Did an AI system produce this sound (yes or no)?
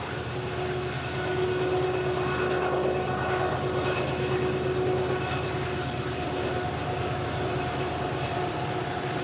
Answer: no